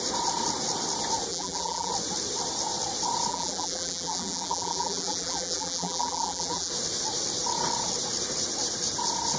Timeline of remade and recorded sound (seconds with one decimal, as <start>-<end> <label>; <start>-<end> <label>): 0.0-1.3 recorded; 1.3-1.9 remade; 1.9-3.3 recorded; 3.3-6.7 remade; 6.7-9.4 recorded